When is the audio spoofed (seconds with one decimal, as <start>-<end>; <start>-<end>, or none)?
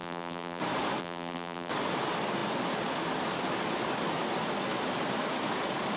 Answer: 0.0-0.6; 1.0-1.7